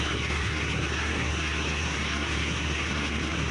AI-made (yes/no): yes